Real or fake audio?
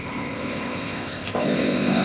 fake